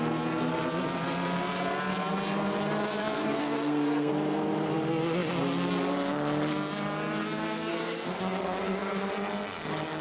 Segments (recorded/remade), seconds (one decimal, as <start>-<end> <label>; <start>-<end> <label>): 0.0-3.0 recorded; 3.0-4.1 remade; 4.1-7.2 recorded; 7.2-9.1 remade; 9.1-10.0 recorded